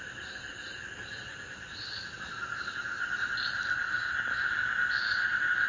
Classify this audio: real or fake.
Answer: real